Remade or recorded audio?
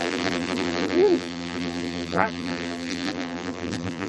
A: remade